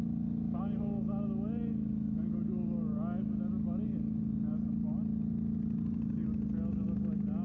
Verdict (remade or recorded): recorded